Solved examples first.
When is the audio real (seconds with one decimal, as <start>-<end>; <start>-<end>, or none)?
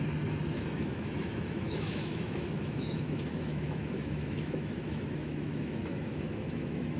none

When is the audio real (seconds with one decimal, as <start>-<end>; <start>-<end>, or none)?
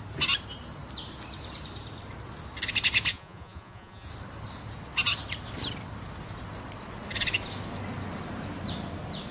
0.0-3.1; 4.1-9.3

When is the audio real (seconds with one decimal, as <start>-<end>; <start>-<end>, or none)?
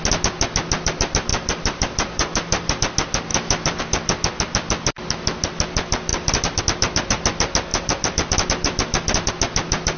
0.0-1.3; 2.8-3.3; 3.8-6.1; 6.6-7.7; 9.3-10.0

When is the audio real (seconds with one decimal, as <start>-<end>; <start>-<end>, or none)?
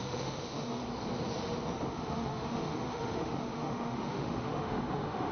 0.8-1.9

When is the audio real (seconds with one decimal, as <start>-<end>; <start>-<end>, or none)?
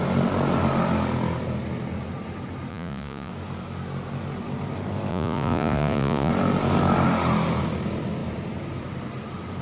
0.0-2.7; 3.3-5.1; 6.3-9.6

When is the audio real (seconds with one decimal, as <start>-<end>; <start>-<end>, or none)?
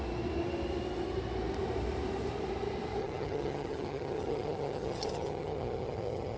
0.0-3.0